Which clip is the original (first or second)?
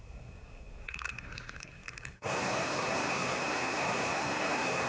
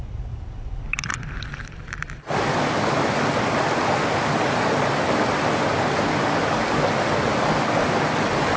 second